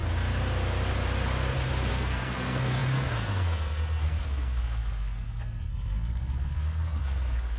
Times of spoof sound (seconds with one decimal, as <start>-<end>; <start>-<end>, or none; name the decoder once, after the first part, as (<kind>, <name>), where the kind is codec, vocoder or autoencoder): 1.9-7.6 (codec, SNAC)